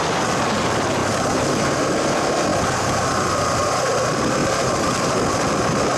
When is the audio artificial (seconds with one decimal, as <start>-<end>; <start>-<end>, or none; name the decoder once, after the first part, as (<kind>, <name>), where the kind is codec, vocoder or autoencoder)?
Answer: 1.0-1.8 (vocoder, BigVGAN v2); 2.5-3.3; 4.4-5.0